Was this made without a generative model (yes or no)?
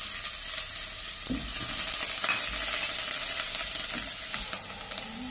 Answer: yes